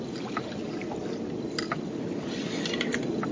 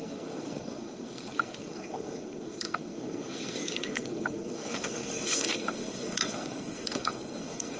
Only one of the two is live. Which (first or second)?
first